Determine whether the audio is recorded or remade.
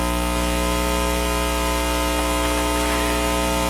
recorded